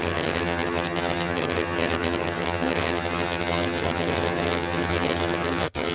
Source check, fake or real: fake